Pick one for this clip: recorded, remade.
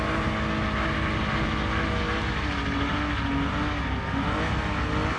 recorded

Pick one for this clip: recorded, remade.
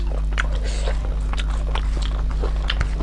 recorded